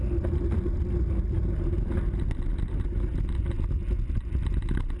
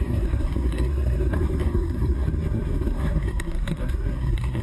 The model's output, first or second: second